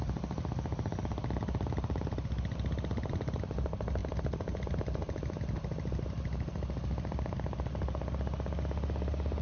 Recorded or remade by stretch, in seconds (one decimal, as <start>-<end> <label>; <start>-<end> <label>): 0.0-9.4 recorded